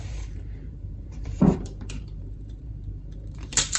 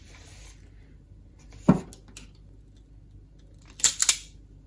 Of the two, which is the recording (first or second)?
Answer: second